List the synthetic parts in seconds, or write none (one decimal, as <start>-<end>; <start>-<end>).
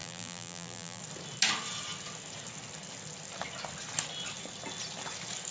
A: 0.0-1.0